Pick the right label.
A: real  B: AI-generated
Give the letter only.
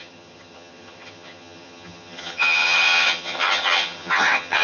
B